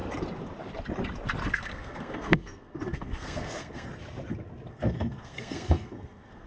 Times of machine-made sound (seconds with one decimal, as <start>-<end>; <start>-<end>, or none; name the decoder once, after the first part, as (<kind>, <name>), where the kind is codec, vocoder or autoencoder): 1.5-3.9 (codec, SNAC); 4.7-6.5